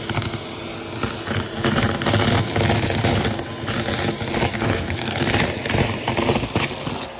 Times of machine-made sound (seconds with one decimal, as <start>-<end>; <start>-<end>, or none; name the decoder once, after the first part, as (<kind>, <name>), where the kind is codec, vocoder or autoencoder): 4.5-5.3 (codec, SNAC)